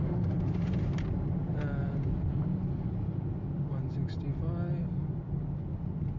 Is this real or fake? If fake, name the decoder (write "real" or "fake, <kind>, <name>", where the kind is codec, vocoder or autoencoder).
real